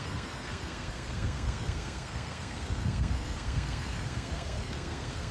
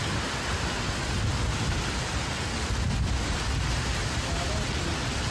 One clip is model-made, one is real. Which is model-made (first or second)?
first